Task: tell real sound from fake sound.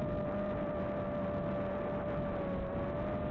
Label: real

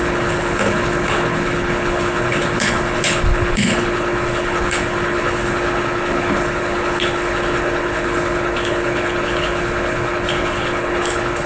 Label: fake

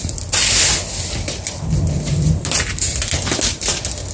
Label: real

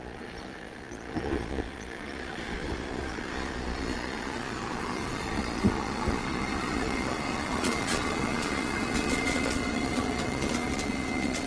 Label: fake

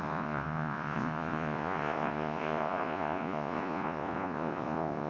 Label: fake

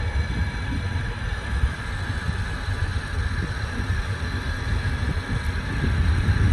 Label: real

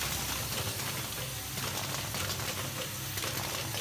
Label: real